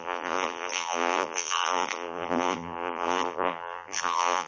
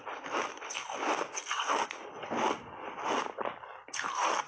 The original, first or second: second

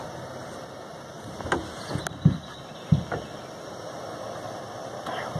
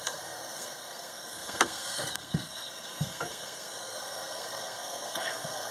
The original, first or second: first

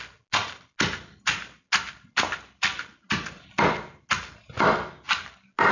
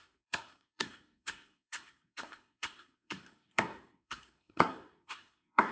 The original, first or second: first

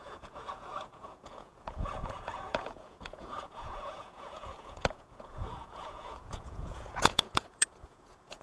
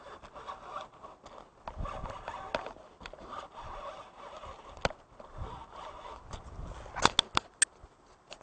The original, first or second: second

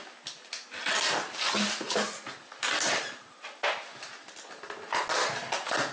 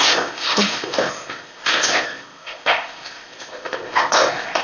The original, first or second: first